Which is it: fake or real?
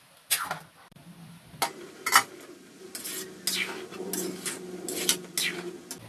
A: real